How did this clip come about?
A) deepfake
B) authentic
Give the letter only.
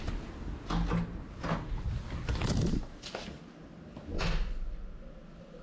B